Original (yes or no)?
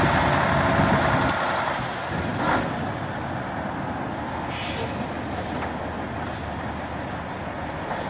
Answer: yes